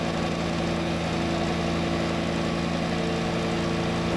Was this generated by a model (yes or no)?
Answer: no